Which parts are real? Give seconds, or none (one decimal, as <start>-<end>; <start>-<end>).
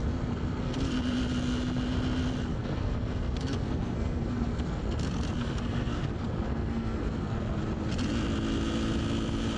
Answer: 0.9-2.5; 5.0-5.4; 7.6-9.6